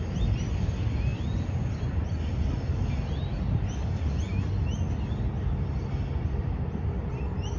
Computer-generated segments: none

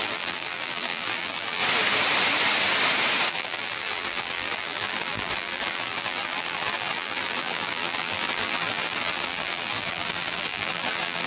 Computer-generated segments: 0.0-1.6; 3.3-11.3

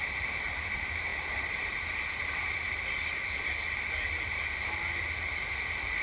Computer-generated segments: 0.0-6.0

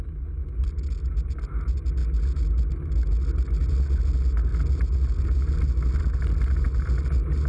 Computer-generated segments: none

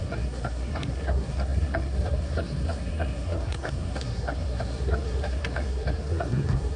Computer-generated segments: 0.0-6.8

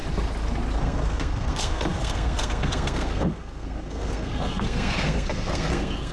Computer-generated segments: 0.8-6.1